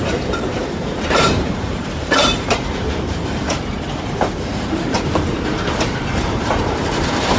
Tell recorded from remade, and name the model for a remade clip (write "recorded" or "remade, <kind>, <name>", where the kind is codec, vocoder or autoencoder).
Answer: remade, vocoder, BigVGAN v2